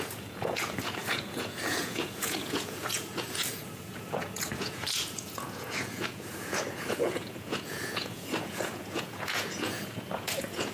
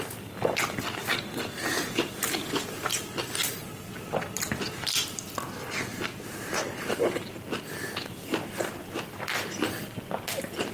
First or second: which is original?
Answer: second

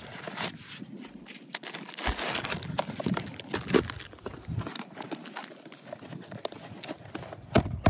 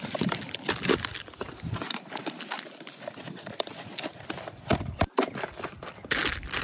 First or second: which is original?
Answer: first